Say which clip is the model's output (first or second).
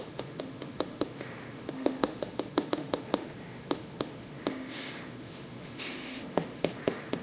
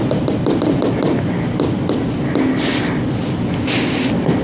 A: first